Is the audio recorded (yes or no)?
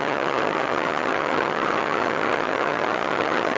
no